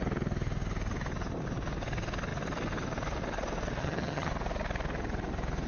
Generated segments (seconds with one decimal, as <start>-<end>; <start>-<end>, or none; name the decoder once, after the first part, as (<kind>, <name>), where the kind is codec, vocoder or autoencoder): 3.8-4.3 (vocoder, HiFi-GAN)